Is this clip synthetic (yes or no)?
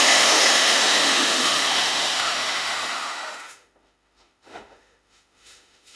yes